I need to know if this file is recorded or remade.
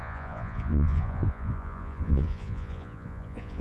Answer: remade